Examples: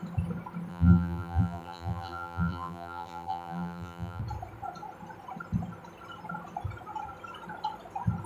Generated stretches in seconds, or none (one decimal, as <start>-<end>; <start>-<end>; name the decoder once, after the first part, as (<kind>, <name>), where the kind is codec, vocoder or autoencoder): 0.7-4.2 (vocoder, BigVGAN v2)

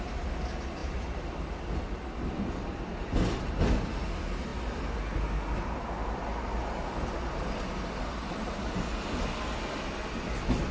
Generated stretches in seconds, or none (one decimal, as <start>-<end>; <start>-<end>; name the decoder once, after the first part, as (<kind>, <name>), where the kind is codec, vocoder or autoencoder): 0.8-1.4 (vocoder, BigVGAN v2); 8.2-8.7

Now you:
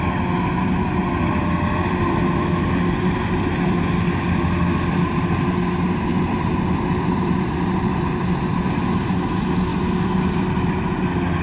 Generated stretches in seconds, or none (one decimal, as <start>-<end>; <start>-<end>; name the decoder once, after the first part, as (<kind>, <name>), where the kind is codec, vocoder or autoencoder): 1.0-3.8 (vocoder, BigVGAN v2); 6.1-8.7; 9.7-10.8